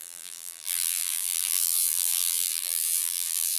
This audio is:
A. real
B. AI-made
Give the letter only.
B